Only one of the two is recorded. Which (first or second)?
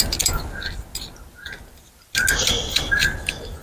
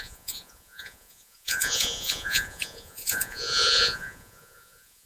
first